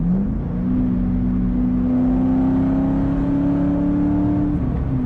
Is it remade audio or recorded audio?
recorded